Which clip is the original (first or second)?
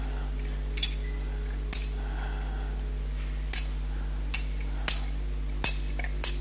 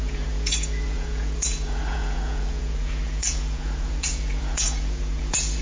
first